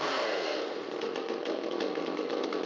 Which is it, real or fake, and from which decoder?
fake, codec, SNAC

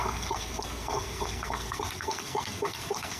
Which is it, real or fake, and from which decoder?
fake, codec, SNAC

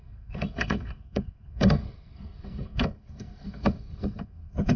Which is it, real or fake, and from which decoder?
fake, codec, SNAC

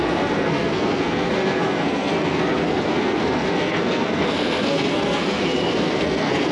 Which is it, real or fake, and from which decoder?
fake, codec, SNAC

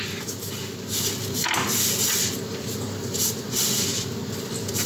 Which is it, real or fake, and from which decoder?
real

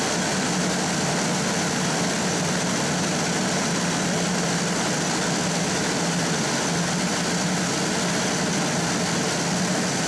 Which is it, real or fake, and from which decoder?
real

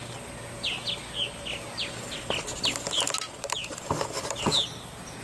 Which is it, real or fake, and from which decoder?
real